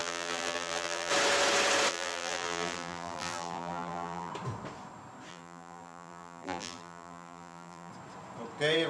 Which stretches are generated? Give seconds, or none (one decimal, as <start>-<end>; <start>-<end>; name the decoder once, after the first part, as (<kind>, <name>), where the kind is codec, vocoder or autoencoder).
0.0-1.1 (vocoder, BigVGAN v2); 1.9-4.3; 5.3-7.9